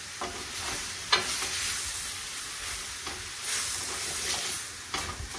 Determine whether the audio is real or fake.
real